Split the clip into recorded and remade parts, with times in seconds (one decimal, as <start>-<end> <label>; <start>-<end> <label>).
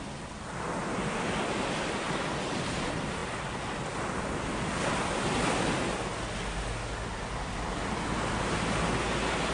0.0-9.5 recorded